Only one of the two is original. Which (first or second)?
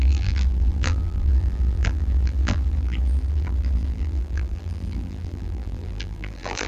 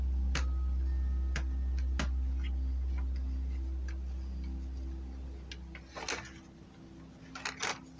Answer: second